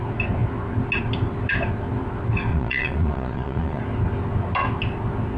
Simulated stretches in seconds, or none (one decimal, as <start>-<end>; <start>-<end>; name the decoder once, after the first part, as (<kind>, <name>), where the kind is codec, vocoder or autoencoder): 2.5-3.8 (vocoder, Vocos)